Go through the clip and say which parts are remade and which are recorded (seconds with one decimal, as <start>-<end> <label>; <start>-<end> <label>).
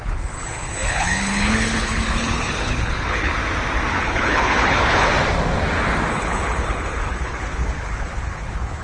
0.0-3.3 remade; 3.3-3.9 recorded; 3.9-5.1 remade; 5.1-6.1 recorded; 6.1-8.8 remade